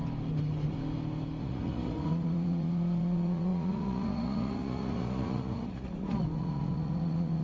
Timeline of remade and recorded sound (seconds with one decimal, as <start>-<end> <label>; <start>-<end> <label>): 0.0-1.4 recorded; 1.4-7.4 remade